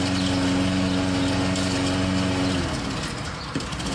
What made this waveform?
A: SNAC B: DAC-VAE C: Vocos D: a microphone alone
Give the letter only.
D